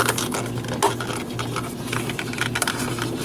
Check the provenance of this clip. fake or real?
real